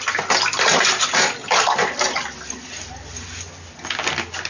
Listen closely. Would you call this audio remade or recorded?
recorded